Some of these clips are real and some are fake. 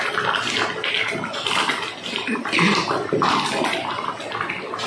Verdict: real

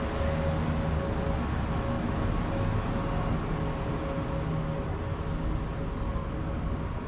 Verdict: real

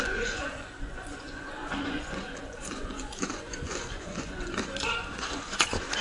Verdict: fake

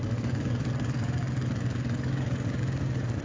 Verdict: fake